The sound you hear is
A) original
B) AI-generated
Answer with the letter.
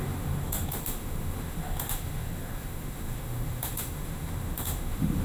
B